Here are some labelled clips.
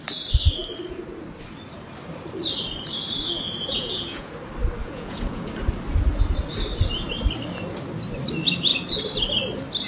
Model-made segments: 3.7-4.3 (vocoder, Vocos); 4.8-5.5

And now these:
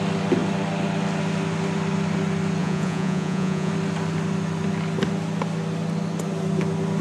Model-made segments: 2.6-3.7 (vocoder, Vocos)

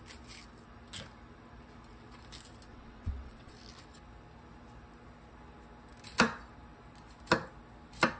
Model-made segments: 2.7-3.5 (vocoder, WaveNeXt)